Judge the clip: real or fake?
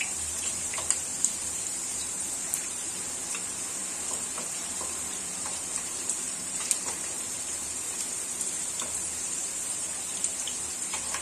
fake